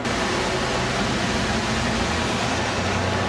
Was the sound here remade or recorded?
recorded